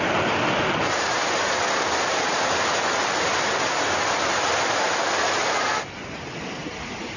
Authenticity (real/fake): real